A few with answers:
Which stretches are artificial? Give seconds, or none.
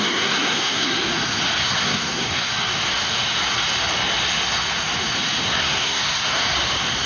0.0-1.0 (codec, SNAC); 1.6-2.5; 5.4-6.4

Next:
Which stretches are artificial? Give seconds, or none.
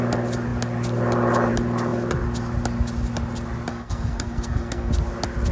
3.7-4.9 (codec, SNAC)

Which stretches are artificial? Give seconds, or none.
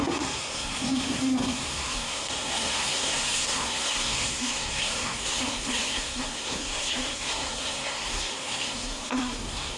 0.0-9.8 (codec, SNAC)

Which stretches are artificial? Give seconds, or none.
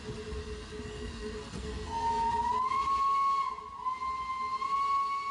0.4-2.3 (codec, SNAC)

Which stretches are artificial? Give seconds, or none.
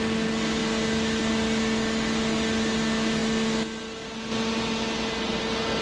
none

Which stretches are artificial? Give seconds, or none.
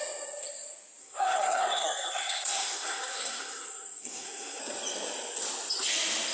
1.0-4.6 (codec, SNAC)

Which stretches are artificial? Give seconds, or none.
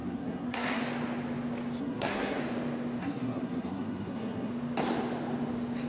0.0-0.8 (codec, SNAC); 1.8-2.4; 3.0-4.5